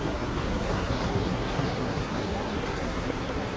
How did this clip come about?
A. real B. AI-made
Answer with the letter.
B